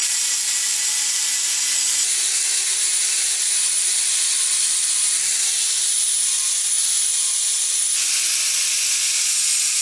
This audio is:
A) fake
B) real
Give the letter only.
B